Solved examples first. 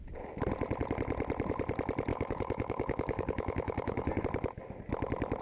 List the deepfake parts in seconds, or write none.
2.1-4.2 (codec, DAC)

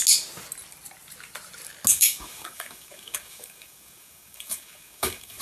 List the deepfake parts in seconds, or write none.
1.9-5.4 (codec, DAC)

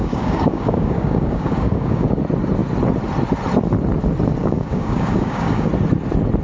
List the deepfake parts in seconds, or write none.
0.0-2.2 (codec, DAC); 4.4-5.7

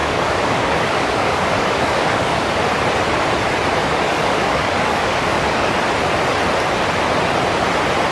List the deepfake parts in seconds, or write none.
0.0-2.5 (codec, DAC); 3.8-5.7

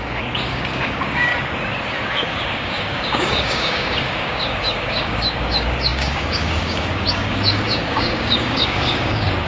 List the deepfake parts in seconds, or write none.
0.0-1.3 (codec, DAC); 2.1-9.5